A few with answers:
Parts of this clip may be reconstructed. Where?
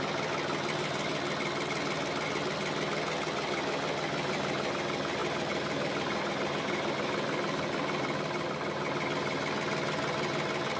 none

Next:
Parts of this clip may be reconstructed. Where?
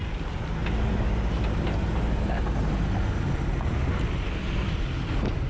none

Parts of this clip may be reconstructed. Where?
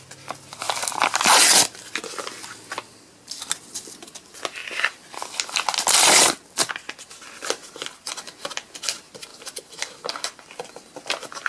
4.6-6.7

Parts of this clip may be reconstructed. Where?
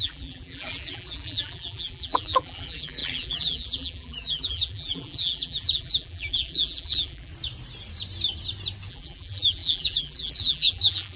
0.0-7.3; 8.9-11.2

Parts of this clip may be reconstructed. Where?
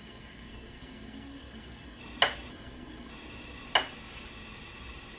0.0-2.0; 2.5-3.1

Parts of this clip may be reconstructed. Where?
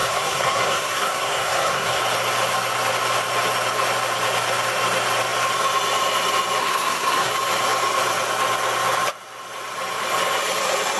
0.0-2.0; 6.6-7.3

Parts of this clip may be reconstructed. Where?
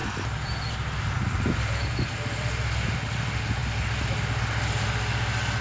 none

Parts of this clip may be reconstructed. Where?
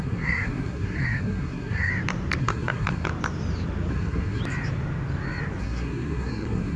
0.0-1.9; 2.4-3.1; 3.9-4.4; 5.6-6.8